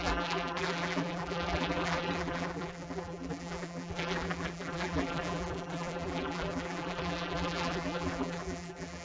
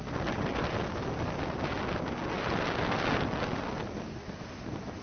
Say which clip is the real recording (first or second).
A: second